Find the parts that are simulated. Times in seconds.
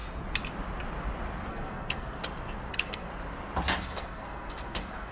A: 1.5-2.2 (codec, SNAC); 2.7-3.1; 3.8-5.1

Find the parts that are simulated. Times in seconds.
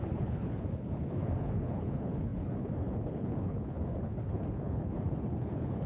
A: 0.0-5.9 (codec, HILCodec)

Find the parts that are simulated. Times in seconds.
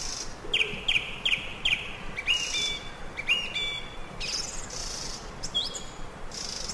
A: 4.8-5.4 (vocoder, Vocos)